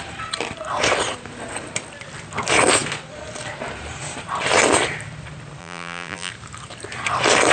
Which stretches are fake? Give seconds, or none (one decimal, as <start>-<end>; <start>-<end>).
5.6-6.3